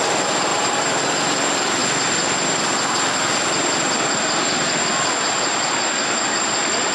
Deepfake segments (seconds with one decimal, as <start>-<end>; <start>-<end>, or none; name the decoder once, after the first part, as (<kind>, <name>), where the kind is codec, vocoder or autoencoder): 0.5-1.0 (vocoder, BigVGAN v2)